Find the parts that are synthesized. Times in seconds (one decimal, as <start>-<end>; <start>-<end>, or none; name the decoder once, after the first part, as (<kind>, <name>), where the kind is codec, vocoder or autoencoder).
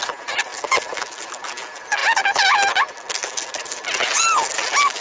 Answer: none